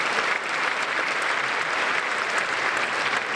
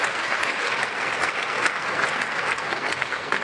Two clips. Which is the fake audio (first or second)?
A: second